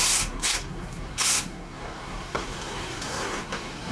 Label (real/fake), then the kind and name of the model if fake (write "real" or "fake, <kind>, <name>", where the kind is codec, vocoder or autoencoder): fake, codec, SNAC